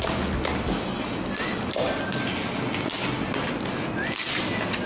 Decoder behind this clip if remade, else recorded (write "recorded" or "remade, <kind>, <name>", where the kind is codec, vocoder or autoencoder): recorded